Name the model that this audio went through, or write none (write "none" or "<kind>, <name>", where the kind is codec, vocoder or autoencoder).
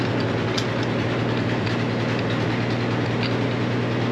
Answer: none